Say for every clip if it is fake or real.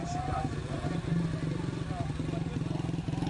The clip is real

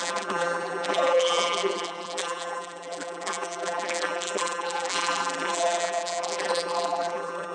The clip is fake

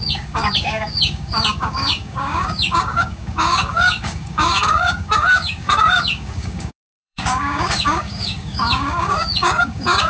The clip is fake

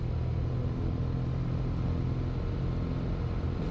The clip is real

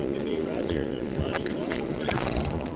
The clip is fake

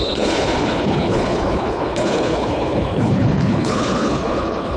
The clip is fake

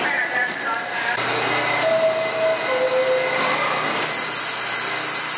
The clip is real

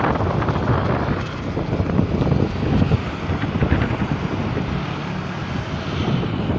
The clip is real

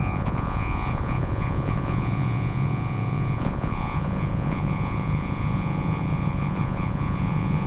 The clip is fake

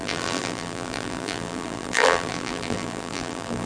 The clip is fake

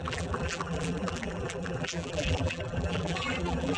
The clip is fake